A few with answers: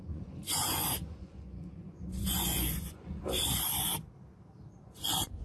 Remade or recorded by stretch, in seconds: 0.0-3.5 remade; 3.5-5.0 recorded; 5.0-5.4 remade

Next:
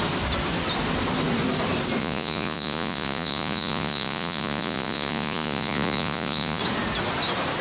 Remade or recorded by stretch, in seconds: 0.0-2.0 recorded; 2.0-6.6 remade; 6.6-7.6 recorded

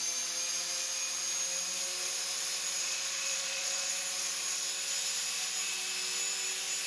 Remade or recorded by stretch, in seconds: 0.0-2.8 recorded; 2.8-3.9 remade; 3.9-6.9 recorded